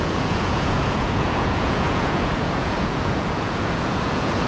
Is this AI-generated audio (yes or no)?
yes